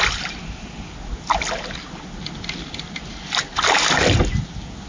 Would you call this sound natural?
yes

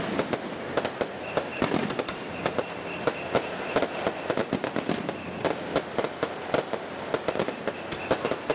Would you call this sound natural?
yes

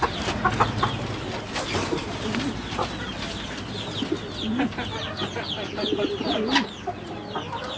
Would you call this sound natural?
yes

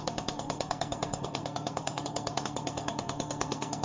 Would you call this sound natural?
no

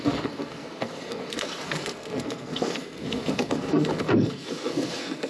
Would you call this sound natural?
no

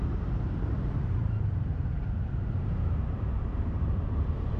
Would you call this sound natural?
no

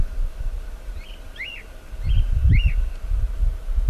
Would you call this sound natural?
yes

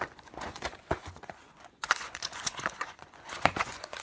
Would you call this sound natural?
no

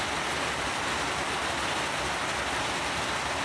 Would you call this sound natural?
yes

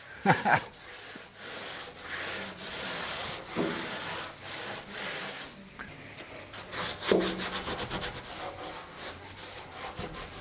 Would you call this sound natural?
yes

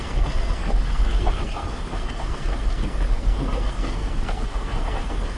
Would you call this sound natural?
no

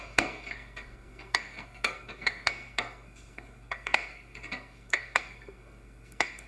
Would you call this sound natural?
no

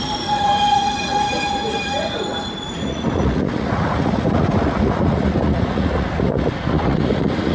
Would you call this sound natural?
no